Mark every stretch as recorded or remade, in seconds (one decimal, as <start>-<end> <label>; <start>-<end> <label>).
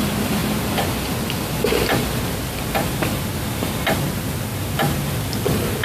0.0-4.5 recorded; 4.5-5.1 remade; 5.1-5.8 recorded